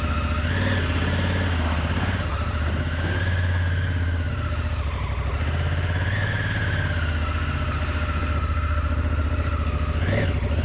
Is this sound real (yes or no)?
yes